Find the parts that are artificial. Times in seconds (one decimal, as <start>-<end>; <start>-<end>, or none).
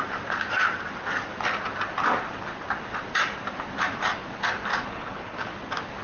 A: 4.9-5.5